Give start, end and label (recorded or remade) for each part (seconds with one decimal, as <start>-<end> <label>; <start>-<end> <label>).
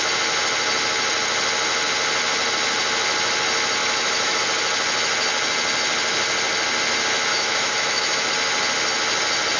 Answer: 0.0-3.8 recorded; 3.8-4.4 remade; 4.4-7.3 recorded; 7.3-8.3 remade; 8.3-9.6 recorded